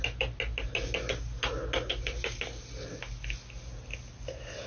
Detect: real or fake real